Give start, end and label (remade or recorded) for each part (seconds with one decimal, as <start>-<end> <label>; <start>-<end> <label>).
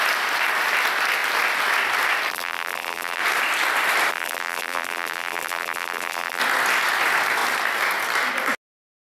0.0-2.3 recorded; 2.3-3.2 remade; 3.2-4.1 recorded; 4.1-6.4 remade; 6.4-9.1 recorded